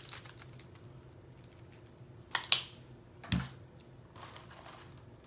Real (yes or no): yes